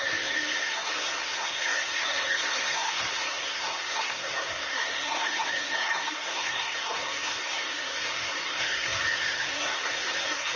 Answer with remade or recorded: remade